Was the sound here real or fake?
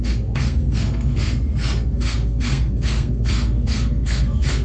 fake